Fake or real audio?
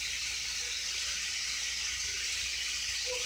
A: real